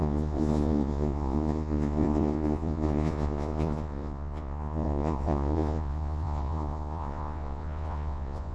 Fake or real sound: fake